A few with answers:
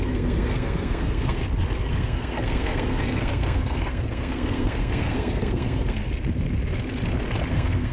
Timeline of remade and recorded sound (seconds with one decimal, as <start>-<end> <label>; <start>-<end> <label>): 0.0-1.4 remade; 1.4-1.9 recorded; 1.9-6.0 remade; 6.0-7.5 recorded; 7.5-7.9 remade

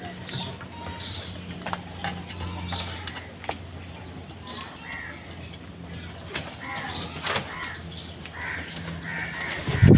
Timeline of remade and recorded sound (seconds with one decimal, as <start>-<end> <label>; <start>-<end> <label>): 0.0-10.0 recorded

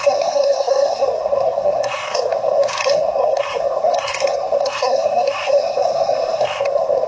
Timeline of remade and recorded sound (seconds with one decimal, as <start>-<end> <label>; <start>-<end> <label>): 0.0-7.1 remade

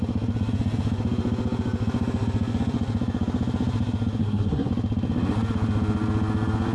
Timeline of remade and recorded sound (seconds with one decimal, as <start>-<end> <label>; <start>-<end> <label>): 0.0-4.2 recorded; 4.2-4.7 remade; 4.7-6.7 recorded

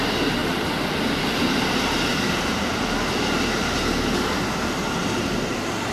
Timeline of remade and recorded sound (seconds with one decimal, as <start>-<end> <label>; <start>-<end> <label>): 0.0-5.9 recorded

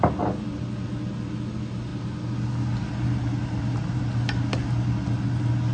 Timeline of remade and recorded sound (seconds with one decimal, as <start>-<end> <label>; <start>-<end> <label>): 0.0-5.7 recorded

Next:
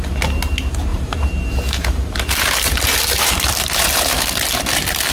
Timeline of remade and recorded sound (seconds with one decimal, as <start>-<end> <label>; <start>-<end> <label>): 0.0-0.9 recorded; 0.9-4.0 remade; 4.0-5.1 recorded

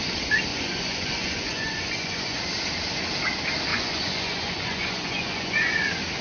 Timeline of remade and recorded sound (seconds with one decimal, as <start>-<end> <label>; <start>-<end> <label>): 0.0-0.5 recorded; 0.5-2.4 remade; 2.4-3.7 recorded; 3.7-5.7 remade; 5.7-6.2 recorded